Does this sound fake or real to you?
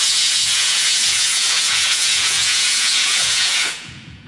fake